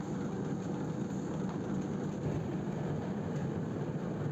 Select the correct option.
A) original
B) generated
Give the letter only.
A